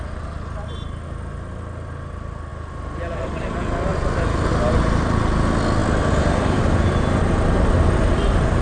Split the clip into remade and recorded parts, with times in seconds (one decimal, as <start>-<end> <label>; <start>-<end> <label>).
0.0-8.6 recorded